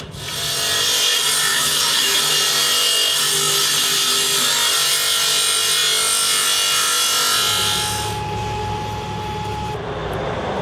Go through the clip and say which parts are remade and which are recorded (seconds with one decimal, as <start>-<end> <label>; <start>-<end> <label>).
0.0-1.5 recorded; 1.5-2.2 remade; 2.2-10.6 recorded